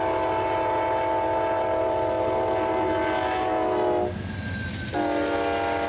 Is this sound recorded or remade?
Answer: recorded